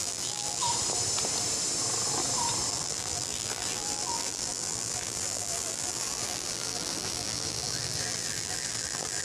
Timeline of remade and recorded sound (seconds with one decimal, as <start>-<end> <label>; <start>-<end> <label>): 0.0-0.6 remade; 0.6-2.7 recorded; 2.7-9.2 remade